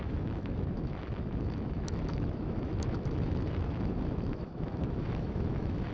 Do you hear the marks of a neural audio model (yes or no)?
yes